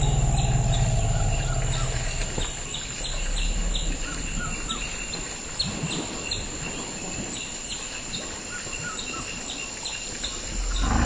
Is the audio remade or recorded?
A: recorded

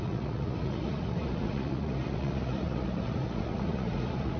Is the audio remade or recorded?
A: remade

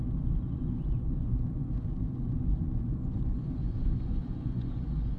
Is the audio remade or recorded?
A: remade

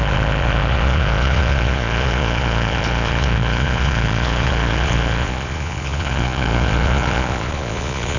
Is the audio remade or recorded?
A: remade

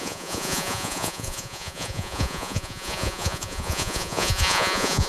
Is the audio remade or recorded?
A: remade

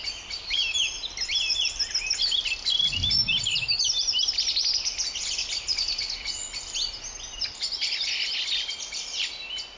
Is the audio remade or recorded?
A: recorded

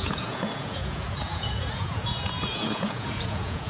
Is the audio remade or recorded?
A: remade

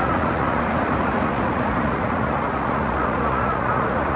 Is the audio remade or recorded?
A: remade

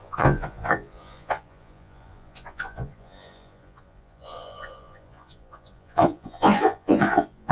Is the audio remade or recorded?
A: remade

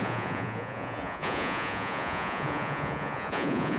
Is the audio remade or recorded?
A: remade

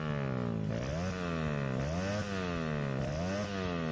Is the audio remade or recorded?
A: recorded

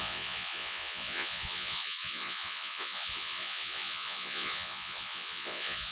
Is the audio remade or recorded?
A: remade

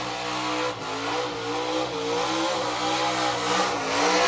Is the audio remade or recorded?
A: recorded